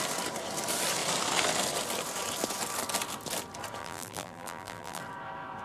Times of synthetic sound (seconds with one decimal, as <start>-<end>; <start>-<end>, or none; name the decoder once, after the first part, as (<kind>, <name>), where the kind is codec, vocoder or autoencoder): 3.8-5.0 (vocoder, BigVGAN v2)

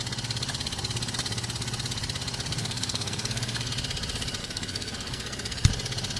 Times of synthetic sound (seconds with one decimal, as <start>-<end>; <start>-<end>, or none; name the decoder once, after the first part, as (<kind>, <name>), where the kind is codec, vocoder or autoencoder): 2.6-3.7 (codec, SNAC); 4.4-5.7

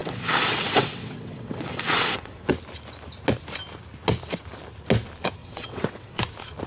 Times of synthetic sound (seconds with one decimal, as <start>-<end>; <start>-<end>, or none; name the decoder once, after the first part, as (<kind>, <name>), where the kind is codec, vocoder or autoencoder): 0.0-2.5 (vocoder, WaveNeXt); 5.4-6.2

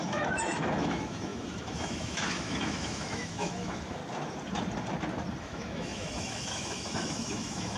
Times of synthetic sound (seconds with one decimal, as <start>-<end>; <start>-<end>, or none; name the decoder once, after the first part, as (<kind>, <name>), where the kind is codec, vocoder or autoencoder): 0.0-4.0 (autoencoder, DAC-VAE); 5.4-7.8

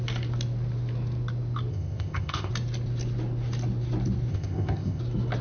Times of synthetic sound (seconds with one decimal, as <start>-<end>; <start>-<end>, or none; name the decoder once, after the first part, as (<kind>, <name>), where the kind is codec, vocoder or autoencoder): 1.7-2.5 (codec, ZipCodec); 4.3-5.0